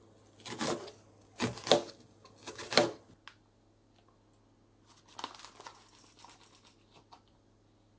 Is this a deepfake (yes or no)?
no